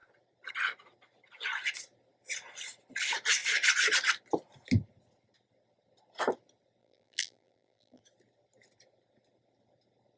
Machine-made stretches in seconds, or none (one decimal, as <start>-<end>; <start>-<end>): 6.8-8.0